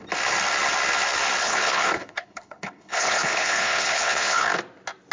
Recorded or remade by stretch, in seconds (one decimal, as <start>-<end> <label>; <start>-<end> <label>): 0.0-1.4 recorded; 1.4-4.5 remade; 4.5-5.1 recorded